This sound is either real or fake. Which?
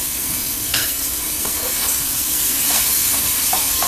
fake